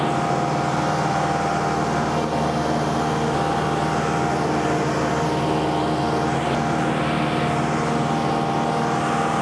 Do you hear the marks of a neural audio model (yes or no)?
no